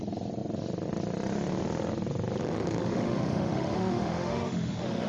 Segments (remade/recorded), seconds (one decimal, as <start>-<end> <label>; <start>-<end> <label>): 0.0-2.4 recorded; 2.4-5.1 remade

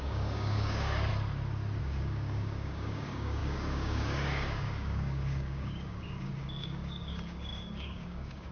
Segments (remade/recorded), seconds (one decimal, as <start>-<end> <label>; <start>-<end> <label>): 0.0-1.1 remade; 1.1-1.8 recorded; 1.8-8.5 remade

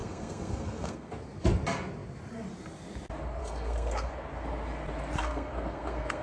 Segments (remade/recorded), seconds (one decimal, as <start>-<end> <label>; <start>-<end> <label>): 0.0-1.1 remade; 1.1-3.4 recorded; 3.4-4.1 remade; 4.1-5.2 recorded; 5.2-6.2 remade

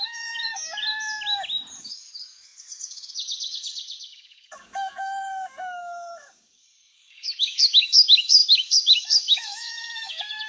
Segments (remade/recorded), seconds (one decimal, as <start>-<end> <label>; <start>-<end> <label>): 0.0-0.8 remade; 0.8-1.8 recorded; 1.8-10.5 remade

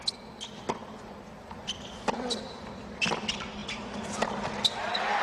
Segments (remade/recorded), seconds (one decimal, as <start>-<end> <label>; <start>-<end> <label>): 0.0-5.2 recorded